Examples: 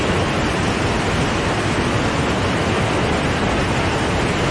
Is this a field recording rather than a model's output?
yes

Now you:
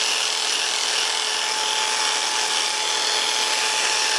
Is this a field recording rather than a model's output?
yes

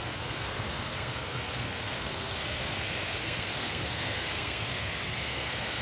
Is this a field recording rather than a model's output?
no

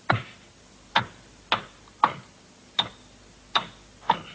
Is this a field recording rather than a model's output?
yes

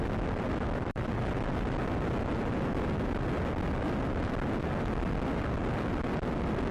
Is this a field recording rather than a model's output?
yes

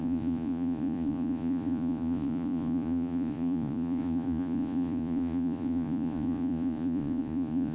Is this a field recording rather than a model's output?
no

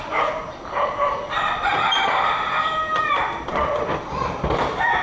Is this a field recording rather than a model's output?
no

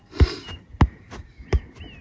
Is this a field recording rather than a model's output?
yes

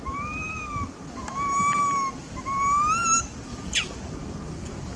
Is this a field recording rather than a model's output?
yes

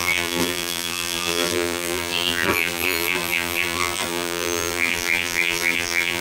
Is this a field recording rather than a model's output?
no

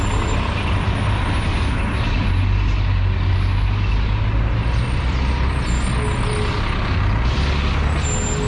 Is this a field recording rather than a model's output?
yes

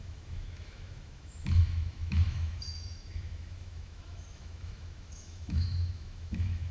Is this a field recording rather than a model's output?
no